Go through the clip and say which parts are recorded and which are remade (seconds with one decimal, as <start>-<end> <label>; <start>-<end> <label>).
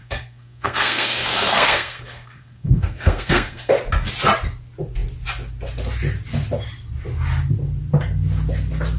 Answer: 0.0-3.7 remade; 3.7-9.0 recorded